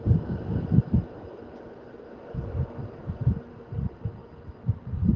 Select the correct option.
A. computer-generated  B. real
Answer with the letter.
B